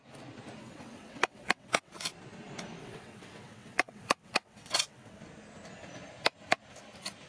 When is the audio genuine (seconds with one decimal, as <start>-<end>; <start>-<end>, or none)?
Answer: 0.0-0.6; 1.9-2.8; 5.2-7.3